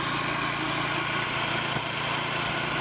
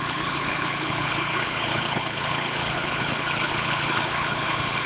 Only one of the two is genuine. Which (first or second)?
first